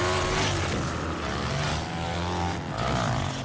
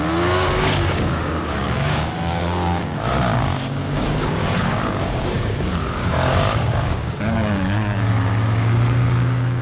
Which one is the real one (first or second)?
first